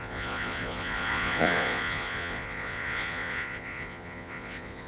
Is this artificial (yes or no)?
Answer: yes